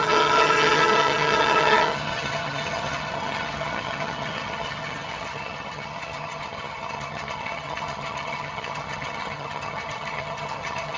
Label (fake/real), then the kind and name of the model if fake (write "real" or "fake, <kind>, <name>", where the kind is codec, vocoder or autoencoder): fake, vocoder, HiFi-GAN